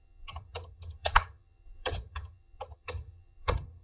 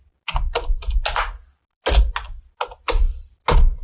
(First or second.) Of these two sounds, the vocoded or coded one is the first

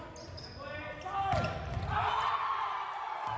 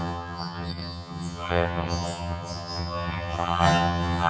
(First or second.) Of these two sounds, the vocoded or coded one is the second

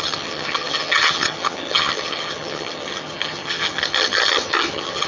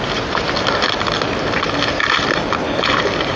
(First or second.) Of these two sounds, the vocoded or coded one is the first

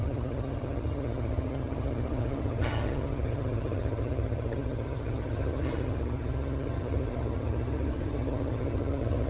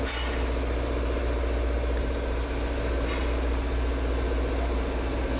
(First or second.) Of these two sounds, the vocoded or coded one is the first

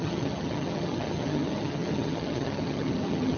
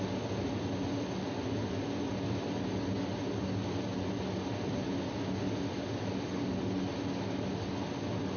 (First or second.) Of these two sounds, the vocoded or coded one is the first